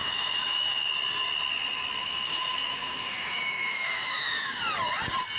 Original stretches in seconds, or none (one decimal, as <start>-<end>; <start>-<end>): 0.9-2.0; 4.6-5.4